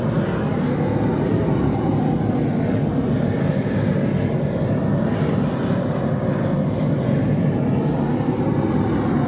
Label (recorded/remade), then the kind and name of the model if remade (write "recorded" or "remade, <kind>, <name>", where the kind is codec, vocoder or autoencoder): recorded